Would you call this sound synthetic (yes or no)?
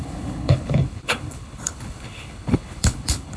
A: yes